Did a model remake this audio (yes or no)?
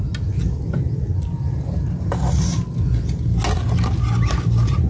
no